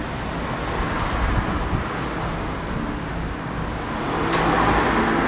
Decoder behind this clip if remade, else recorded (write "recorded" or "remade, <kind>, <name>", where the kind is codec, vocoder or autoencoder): recorded